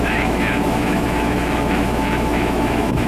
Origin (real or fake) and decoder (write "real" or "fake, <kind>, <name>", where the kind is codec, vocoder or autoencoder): fake, autoencoder, DAC-VAE